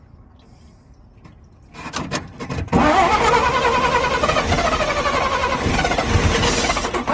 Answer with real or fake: real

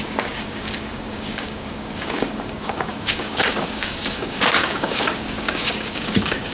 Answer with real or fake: fake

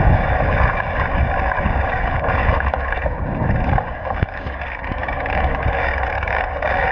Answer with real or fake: fake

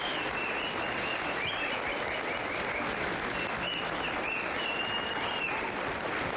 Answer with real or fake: real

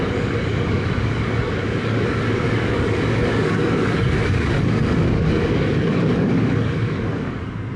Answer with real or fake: fake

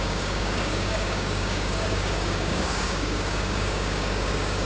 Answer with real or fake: fake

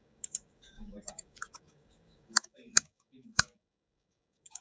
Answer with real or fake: fake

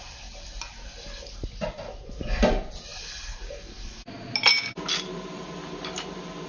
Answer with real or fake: real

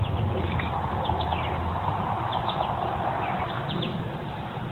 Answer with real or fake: real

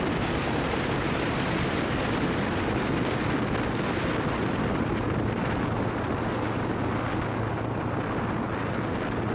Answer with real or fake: real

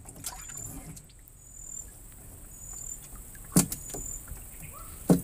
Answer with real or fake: real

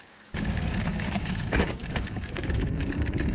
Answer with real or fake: fake